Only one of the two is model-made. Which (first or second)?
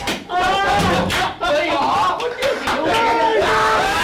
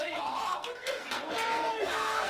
second